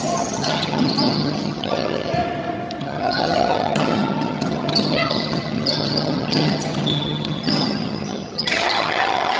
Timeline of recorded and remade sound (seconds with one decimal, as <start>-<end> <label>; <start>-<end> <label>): 0.0-2.1 remade; 2.1-2.8 recorded; 2.8-9.4 remade